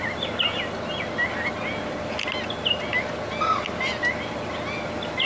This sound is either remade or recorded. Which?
recorded